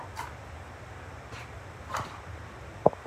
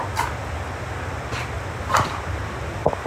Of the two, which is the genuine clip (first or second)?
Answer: second